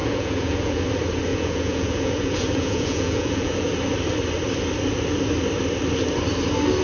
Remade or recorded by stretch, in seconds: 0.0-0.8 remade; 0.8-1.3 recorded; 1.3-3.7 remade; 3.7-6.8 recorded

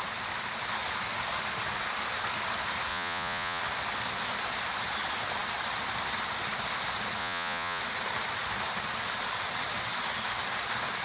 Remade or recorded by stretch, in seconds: 0.0-2.9 recorded; 2.9-3.6 remade; 3.6-7.2 recorded; 7.2-7.8 remade; 7.8-11.0 recorded

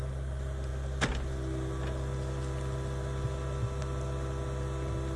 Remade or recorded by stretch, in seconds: 0.0-5.2 recorded

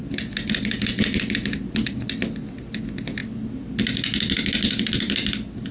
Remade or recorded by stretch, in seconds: 0.0-5.7 recorded

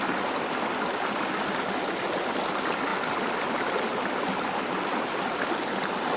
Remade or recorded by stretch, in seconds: 0.0-6.2 recorded